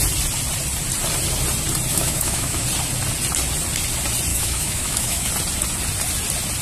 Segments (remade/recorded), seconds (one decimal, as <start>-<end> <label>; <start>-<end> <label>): 0.0-1.9 recorded; 1.9-2.6 remade; 2.6-4.3 recorded; 4.3-5.3 remade; 5.3-6.6 recorded